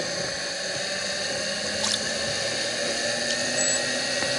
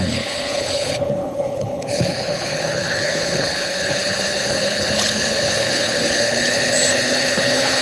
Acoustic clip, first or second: first